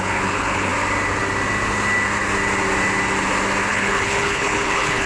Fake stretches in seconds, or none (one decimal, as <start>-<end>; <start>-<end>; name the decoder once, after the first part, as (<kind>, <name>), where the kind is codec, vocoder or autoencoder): 0.0-0.7 (codec, HILCodec); 3.7-5.1